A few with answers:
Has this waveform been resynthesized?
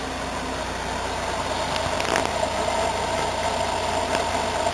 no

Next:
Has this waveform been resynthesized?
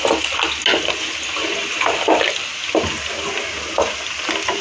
no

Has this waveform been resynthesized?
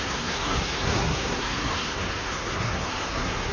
yes